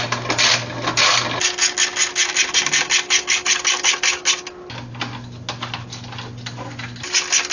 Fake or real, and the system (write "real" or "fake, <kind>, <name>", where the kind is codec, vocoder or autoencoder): real